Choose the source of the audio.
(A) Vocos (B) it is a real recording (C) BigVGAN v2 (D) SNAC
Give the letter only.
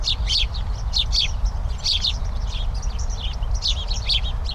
C